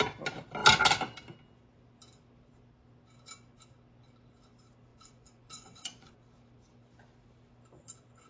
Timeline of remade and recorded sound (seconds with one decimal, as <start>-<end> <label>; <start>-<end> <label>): 0.0-4.9 recorded; 4.9-6.1 remade; 6.1-8.3 recorded